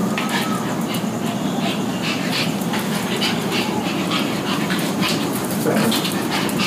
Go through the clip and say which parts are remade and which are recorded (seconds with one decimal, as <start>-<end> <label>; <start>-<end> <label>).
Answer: 0.0-1.9 recorded; 1.9-2.6 remade; 2.6-3.4 recorded; 3.4-5.7 remade; 5.7-6.7 recorded